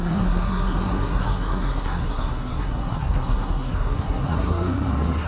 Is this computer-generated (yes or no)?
yes